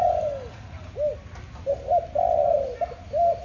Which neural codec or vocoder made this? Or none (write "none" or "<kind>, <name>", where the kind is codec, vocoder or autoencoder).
none